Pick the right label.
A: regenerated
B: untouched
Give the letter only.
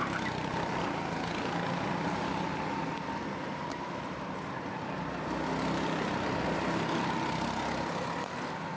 B